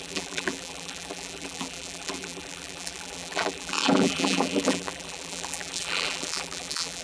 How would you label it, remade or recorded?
remade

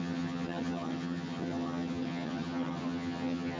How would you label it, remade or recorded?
remade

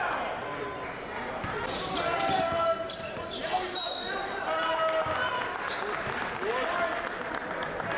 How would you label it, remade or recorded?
recorded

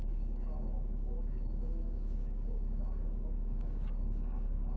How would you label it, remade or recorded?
remade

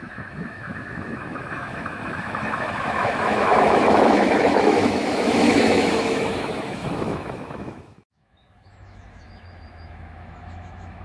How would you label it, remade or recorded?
remade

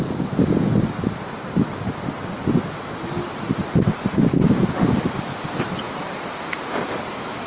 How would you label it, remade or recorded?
recorded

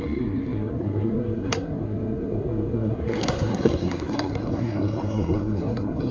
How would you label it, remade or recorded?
remade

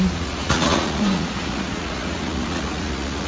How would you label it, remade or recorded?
remade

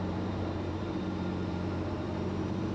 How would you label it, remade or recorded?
remade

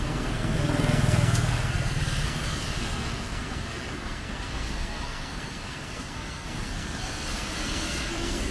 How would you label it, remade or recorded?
remade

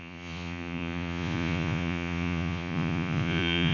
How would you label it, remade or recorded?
remade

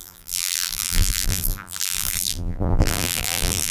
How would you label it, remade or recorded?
remade